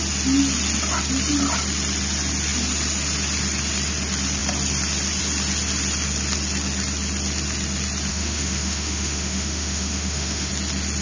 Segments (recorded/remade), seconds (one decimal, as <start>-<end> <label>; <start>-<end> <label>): 0.0-8.1 recorded; 8.1-10.5 remade; 10.5-11.0 recorded